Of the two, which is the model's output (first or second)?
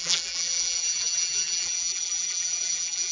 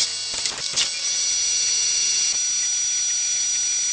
first